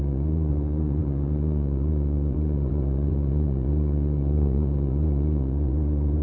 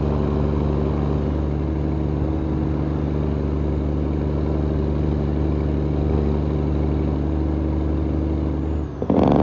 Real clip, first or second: second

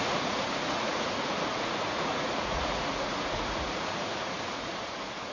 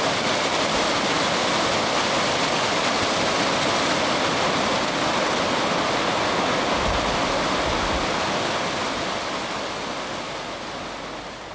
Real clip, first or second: second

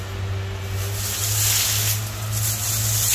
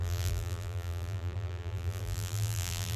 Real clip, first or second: first